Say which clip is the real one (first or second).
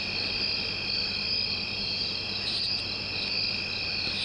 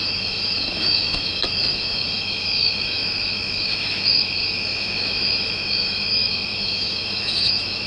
first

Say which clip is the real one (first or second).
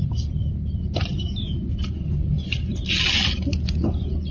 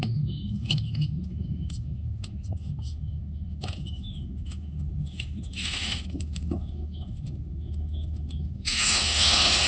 first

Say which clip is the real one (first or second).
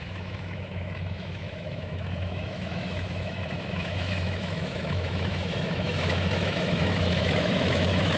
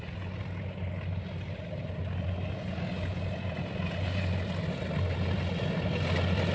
second